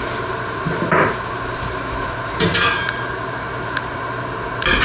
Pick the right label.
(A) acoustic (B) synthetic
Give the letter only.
B